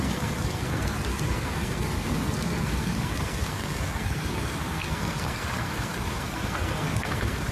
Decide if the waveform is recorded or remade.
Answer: remade